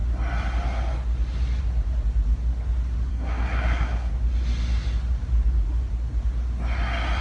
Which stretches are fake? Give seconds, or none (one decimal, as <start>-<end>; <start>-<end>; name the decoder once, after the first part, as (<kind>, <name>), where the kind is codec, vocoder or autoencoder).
3.1-4.1 (codec, SNAC)